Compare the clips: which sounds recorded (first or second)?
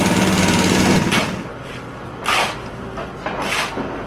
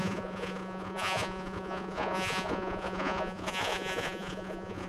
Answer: first